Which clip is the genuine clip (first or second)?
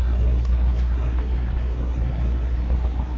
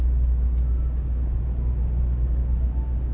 second